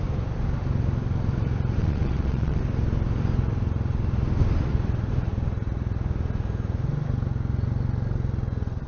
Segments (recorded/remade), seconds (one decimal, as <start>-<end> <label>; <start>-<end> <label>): 0.0-1.8 recorded; 1.8-2.6 remade; 2.6-8.9 recorded